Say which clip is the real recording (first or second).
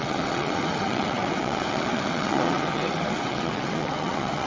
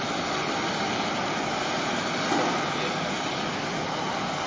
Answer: second